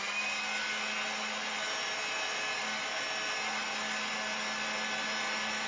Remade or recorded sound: recorded